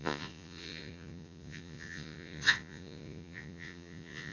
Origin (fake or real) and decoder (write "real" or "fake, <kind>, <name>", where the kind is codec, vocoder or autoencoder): fake, vocoder, Vocos